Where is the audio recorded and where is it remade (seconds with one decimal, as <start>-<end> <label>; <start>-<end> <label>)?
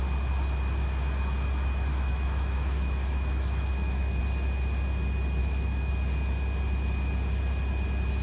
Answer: 0.0-1.9 recorded; 1.9-4.2 remade; 4.2-5.4 recorded; 5.4-5.9 remade; 5.9-8.2 recorded